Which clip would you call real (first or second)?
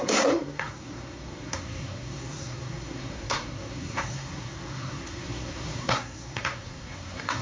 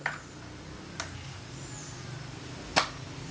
second